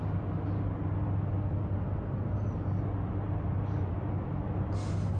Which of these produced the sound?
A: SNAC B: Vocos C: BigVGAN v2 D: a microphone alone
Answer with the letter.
D